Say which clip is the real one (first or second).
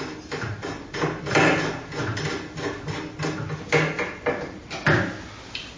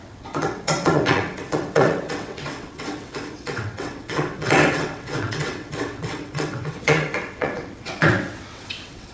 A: first